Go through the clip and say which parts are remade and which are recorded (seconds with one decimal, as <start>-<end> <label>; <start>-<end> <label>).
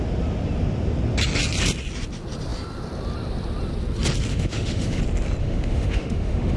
0.0-4.3 recorded; 4.3-5.0 remade; 5.0-5.4 recorded; 5.4-6.6 remade